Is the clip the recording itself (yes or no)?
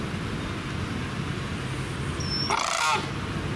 yes